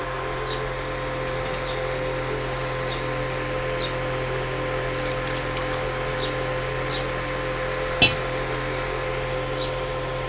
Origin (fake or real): real